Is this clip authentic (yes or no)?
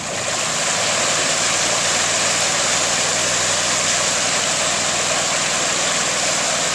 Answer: yes